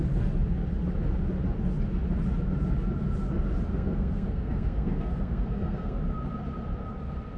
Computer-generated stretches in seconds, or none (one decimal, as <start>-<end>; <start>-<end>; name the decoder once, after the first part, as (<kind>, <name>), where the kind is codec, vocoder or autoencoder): 3.7-6.0 (codec, SNAC)